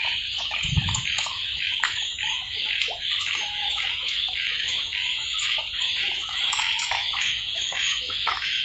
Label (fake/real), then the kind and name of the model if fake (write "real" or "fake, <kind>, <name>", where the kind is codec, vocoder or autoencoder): fake, autoencoder, DAC-VAE